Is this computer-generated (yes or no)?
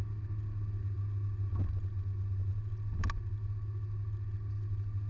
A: no